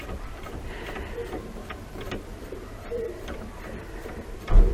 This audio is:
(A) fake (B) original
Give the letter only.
A